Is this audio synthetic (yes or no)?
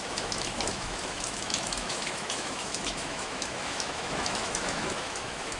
yes